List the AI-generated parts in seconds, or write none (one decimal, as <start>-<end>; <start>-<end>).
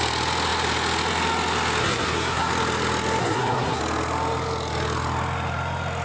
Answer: 1.8-2.5; 3.2-3.8